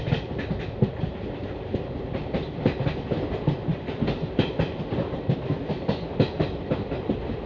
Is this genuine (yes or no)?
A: yes